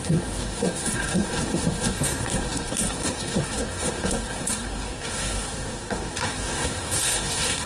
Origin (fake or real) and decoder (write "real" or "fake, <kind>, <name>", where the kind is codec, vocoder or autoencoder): fake, codec, SNAC